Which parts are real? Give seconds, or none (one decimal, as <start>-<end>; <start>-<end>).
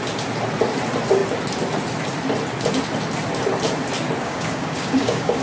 0.0-4.2